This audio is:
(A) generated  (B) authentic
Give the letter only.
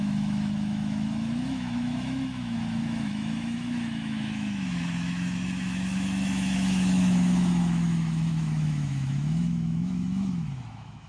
A